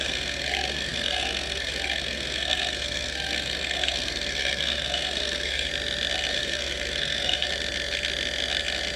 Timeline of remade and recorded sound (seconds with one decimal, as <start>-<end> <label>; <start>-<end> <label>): 0.0-5.7 remade; 5.7-6.3 recorded; 6.3-7.5 remade; 7.5-9.0 recorded